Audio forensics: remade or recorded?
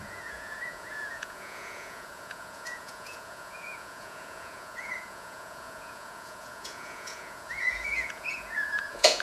remade